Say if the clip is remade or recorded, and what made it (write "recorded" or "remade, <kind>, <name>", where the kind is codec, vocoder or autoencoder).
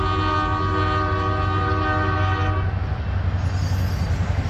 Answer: recorded